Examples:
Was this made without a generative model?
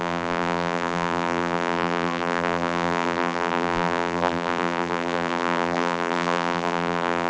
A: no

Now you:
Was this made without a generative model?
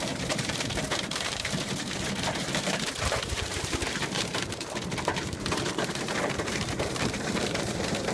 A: no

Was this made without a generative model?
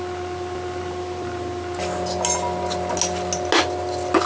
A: yes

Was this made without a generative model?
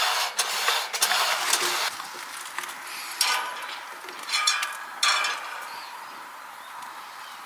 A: yes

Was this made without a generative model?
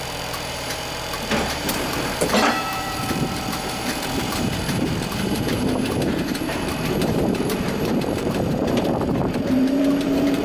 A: no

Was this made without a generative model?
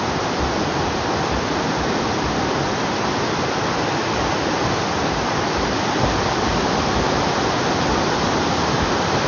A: yes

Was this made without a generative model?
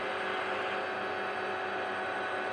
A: yes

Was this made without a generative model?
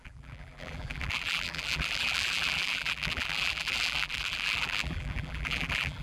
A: no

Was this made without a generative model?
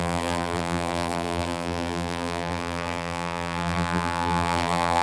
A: no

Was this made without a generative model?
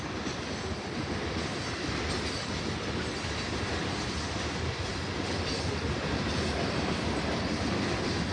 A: yes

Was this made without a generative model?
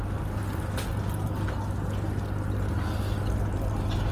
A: yes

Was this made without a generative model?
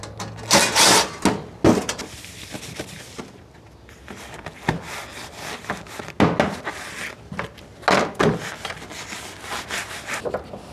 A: yes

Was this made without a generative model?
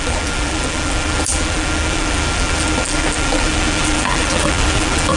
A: no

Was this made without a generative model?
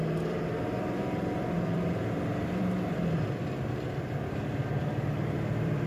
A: no